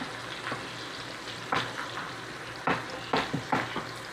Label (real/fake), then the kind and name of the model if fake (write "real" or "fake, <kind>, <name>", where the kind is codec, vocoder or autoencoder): real